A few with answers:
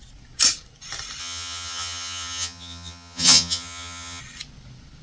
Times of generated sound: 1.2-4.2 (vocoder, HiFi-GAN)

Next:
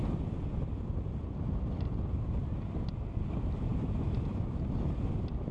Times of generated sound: none

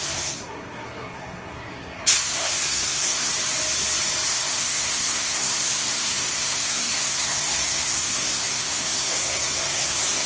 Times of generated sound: 0.0-3.3 (codec, SNAC); 4.3-10.3

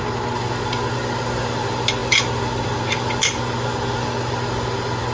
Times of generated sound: none

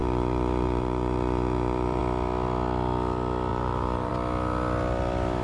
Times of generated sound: 0.0-2.0 (vocoder, BigVGAN v2); 3.5-4.1

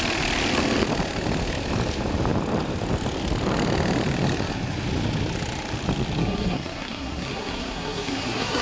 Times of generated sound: 6.2-8.6 (codec, SNAC)